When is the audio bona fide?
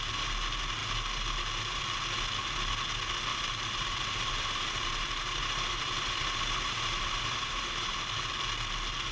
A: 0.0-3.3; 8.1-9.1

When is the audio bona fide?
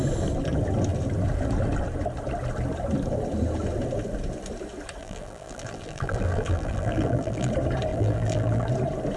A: 0.0-5.0; 7.5-7.9; 8.7-9.2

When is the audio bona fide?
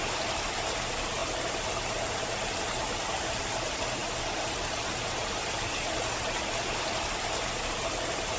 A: 0.0-8.4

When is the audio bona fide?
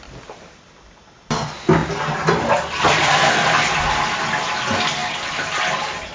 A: 0.0-6.1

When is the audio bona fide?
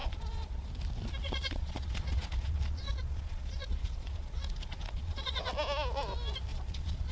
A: 0.7-1.2; 5.5-6.5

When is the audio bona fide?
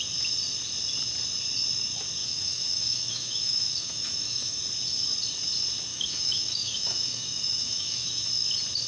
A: 0.0-2.2; 4.6-5.9; 8.3-8.9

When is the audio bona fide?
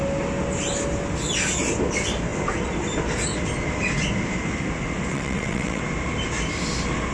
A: 0.0-5.1; 5.8-7.1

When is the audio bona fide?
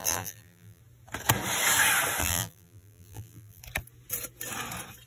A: 0.8-2.2; 3.6-5.1